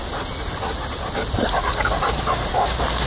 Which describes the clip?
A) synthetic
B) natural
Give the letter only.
B